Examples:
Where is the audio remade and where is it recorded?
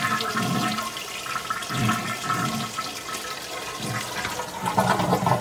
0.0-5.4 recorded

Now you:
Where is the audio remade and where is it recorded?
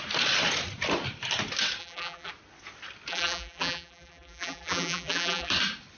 0.0-1.8 recorded; 1.8-2.3 remade; 2.3-3.1 recorded; 3.1-5.5 remade; 5.5-6.0 recorded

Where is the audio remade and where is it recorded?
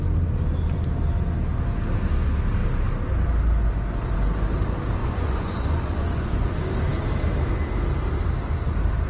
0.0-5.0 recorded; 5.0-6.5 remade; 6.5-9.1 recorded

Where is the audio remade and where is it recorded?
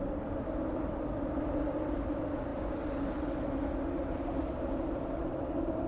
0.0-5.9 recorded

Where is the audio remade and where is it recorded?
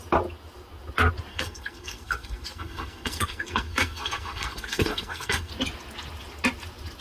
0.0-1.3 recorded; 1.3-5.5 remade; 5.5-7.0 recorded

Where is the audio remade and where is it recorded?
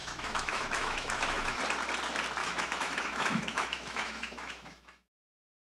0.0-1.6 remade; 1.6-2.4 recorded; 2.4-5.7 remade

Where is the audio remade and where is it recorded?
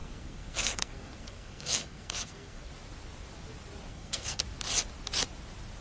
0.0-2.7 remade; 2.7-3.9 recorded; 3.9-4.4 remade; 4.4-5.8 recorded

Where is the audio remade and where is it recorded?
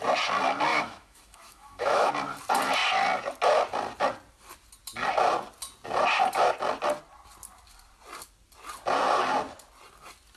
0.0-0.7 recorded; 0.7-2.1 remade; 2.1-10.4 recorded